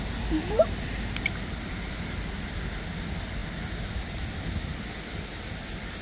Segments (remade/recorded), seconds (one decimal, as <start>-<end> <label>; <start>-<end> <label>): 0.0-6.0 recorded